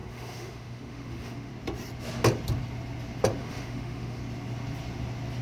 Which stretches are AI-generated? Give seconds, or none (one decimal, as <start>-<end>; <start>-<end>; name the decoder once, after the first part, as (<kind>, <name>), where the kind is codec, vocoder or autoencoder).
0.0-1.5 (autoencoder, DAC-VAE); 3.4-4.2